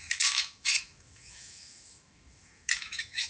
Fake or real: fake